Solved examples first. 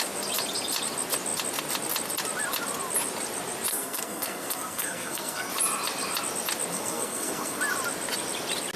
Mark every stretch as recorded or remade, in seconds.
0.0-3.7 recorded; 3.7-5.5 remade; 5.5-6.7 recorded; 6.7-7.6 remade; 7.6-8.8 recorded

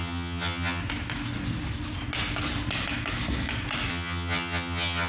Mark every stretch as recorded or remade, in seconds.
0.0-0.8 remade; 0.8-3.9 recorded; 3.9-5.1 remade

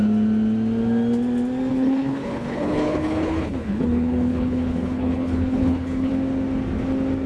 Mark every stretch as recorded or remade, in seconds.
0.0-1.7 recorded; 1.7-6.1 remade; 6.1-7.3 recorded